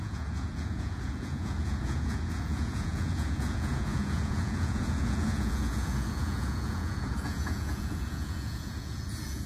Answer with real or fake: fake